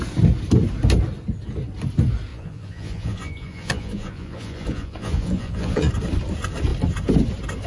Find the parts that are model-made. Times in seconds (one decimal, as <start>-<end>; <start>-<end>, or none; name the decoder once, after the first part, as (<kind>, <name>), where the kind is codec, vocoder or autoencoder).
2.3-5.9 (vocoder, Vocos)